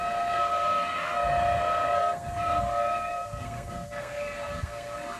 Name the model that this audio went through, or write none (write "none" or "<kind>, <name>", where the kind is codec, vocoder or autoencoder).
codec, SNAC